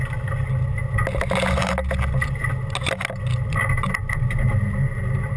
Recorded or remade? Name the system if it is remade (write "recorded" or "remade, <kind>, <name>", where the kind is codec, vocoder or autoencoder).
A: recorded